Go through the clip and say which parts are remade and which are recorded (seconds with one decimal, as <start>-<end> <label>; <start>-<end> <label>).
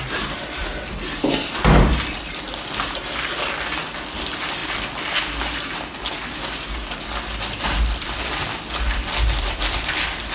0.0-10.3 recorded